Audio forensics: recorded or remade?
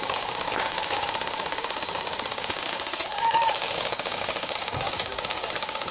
remade